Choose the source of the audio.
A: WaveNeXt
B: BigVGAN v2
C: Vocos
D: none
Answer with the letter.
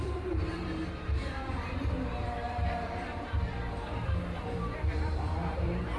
B